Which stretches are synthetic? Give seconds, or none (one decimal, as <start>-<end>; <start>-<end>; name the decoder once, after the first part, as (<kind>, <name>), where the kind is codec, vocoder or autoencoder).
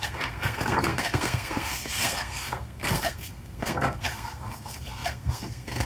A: 0.0-5.9 (codec, SNAC)